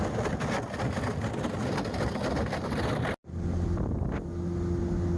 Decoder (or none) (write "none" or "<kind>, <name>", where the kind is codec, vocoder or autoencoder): none